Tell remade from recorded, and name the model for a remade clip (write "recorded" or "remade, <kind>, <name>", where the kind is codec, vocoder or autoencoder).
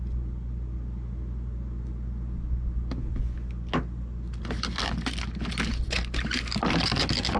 recorded